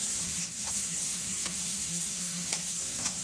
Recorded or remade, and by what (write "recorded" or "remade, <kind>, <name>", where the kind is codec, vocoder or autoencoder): remade, codec, SNAC